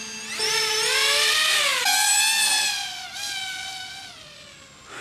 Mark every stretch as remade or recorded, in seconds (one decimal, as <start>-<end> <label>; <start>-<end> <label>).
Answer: 0.0-5.0 recorded